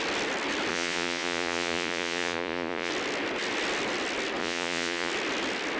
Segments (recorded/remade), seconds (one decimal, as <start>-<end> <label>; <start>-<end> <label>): 0.0-0.7 recorded; 0.7-2.9 remade; 2.9-4.4 recorded; 4.4-5.1 remade; 5.1-5.8 recorded